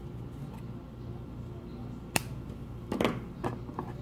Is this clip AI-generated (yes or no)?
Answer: no